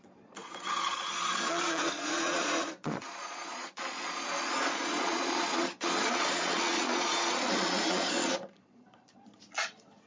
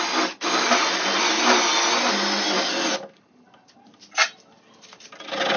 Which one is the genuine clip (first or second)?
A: second